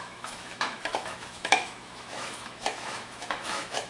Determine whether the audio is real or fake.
fake